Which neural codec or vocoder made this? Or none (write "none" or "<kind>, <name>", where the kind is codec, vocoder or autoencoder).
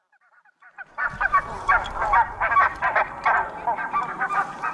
none